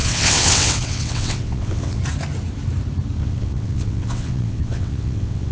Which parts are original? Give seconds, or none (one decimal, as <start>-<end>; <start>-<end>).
2.0-3.2